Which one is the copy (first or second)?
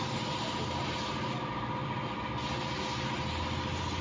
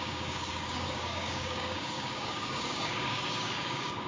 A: second